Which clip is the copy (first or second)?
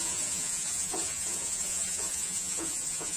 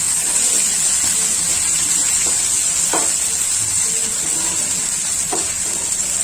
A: first